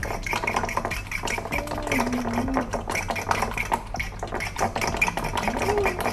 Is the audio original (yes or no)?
yes